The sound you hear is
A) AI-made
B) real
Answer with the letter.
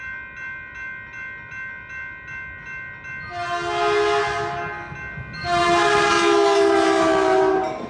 B